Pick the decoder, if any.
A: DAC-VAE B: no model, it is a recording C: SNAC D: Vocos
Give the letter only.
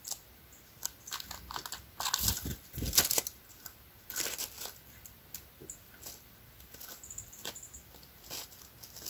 B